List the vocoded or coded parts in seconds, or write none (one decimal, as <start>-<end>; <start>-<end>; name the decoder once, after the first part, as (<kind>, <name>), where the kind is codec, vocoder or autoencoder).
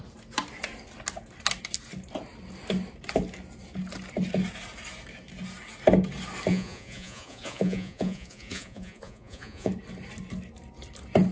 6.5-9.7 (vocoder, Vocos)